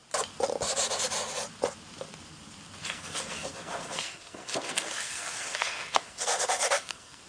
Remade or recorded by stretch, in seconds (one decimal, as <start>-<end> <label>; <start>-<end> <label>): 0.0-2.8 recorded; 2.8-7.3 remade